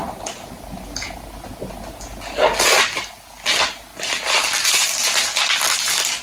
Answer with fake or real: real